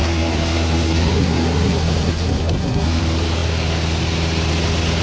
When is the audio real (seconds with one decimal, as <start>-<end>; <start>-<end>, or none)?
3.0-5.0